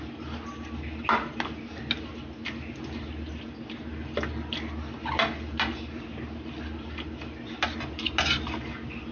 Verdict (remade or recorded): recorded